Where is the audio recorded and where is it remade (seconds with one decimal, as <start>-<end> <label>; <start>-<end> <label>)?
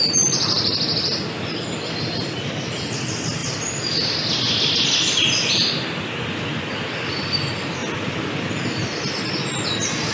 0.0-10.1 recorded